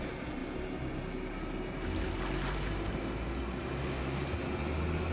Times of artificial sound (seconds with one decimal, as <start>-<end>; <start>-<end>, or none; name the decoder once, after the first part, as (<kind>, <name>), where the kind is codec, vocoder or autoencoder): none